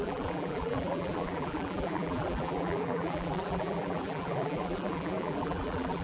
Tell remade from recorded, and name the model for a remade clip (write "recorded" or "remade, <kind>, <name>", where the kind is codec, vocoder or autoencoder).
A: remade, vocoder, BigVGAN v2